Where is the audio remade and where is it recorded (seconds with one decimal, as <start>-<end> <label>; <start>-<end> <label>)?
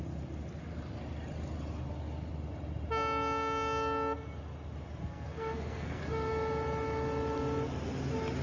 0.0-5.0 recorded; 5.0-6.0 remade; 6.0-8.4 recorded